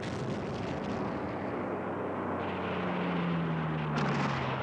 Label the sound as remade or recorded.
recorded